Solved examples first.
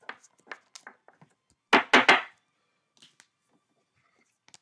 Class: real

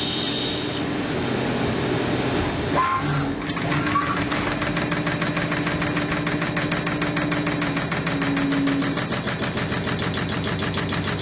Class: real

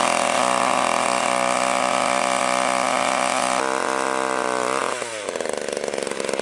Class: real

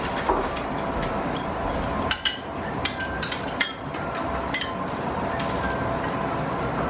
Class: real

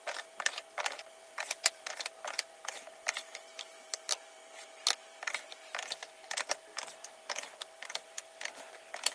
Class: fake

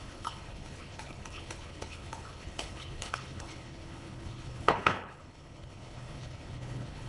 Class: fake